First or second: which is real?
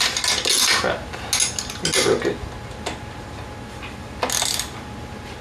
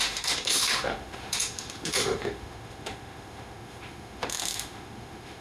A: first